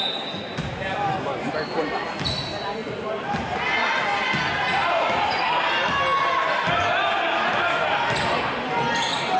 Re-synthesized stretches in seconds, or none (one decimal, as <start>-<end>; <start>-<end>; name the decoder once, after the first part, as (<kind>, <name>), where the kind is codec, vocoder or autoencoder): none